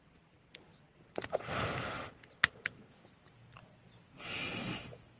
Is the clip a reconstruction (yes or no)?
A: no